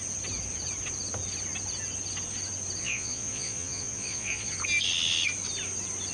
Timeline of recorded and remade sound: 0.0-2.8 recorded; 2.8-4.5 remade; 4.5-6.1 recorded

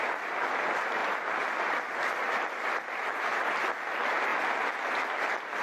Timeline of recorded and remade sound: 0.0-1.0 recorded; 1.0-3.6 remade; 3.6-4.3 recorded; 4.3-5.6 remade

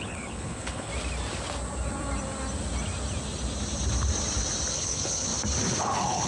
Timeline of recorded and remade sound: 0.0-0.9 remade; 0.9-4.7 recorded; 4.7-5.3 remade; 5.3-5.8 recorded; 5.8-6.3 remade

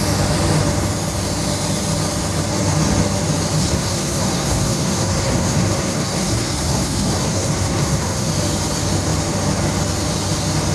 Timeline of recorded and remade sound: 0.0-3.6 recorded; 3.6-8.3 remade; 8.3-10.7 recorded

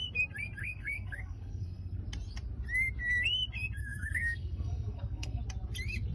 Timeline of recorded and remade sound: 0.0-0.6 recorded; 0.6-2.0 remade; 2.0-3.8 recorded; 3.8-5.4 remade; 5.4-6.1 recorded

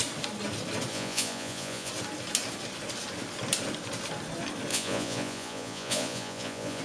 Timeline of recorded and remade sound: 0.0-0.9 recorded; 0.9-1.9 remade; 1.9-4.7 recorded; 4.7-6.8 remade